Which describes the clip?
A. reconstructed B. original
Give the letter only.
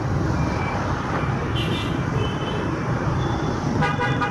A